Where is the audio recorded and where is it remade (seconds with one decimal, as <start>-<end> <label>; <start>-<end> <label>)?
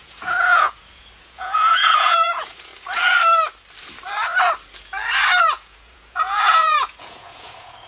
0.0-2.7 remade; 2.7-5.4 recorded; 5.4-7.9 remade